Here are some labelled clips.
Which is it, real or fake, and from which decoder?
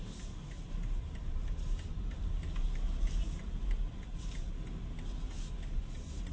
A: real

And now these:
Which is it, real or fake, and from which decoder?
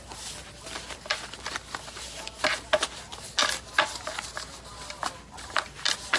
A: real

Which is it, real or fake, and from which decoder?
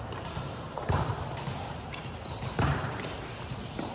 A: fake, vocoder, BigVGAN v2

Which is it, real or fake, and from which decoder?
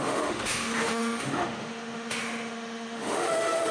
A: fake, autoencoder, DAC-VAE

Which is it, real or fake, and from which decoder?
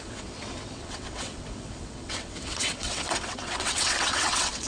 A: fake, vocoder, WaveNeXt